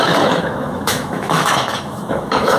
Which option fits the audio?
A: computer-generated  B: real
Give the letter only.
A